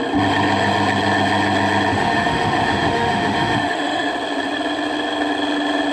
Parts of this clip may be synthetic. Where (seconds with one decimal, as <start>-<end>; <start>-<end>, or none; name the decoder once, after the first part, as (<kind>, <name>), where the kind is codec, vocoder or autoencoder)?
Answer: 1.9-4.1 (autoencoder, DAC-VAE)